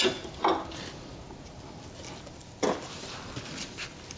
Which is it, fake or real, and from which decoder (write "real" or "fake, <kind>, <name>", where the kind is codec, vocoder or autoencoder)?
real